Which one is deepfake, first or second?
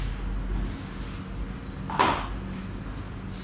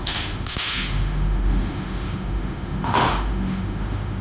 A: second